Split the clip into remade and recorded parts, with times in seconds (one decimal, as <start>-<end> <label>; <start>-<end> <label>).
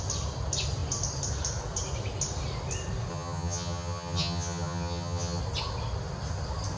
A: 0.0-3.1 recorded; 3.1-5.4 remade; 5.4-6.8 recorded